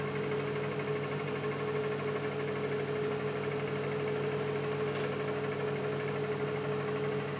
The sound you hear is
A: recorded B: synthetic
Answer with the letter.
A